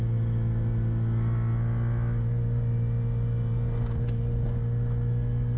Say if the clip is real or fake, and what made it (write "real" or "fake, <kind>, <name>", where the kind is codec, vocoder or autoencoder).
real